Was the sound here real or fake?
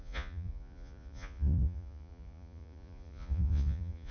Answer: fake